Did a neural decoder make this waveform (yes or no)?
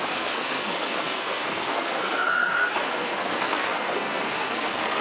yes